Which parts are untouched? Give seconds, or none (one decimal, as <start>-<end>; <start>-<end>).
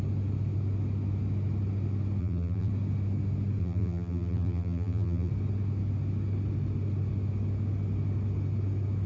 0.0-2.2; 2.7-3.6; 5.3-9.1